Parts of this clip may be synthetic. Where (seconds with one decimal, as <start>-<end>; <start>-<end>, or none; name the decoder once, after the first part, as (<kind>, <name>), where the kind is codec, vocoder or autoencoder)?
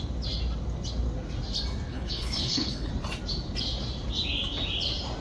1.9-2.9 (codec, HILCodec)